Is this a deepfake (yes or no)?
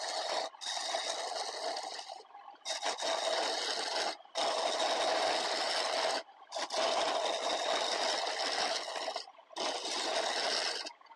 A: no